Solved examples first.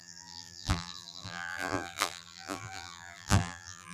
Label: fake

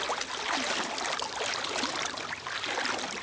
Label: real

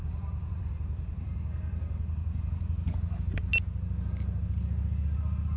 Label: real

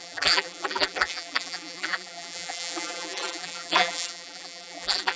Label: fake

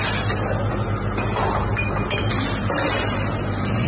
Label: real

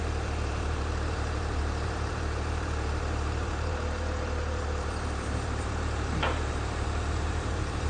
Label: fake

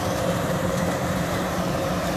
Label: fake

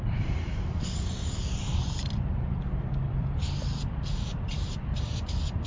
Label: fake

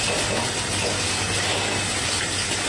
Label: real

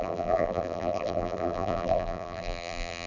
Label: fake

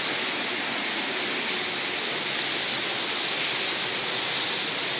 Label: real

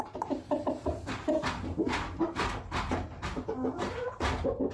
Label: fake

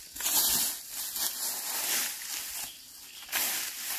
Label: real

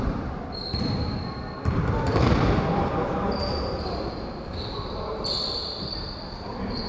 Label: fake